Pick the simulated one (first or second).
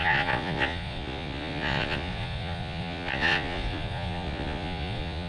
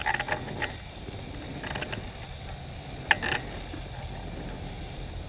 first